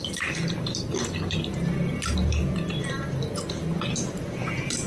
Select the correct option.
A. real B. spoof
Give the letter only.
A